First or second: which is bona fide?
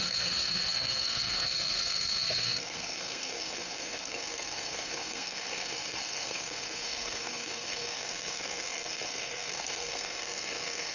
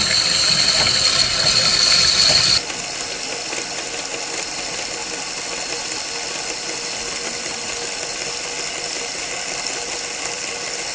second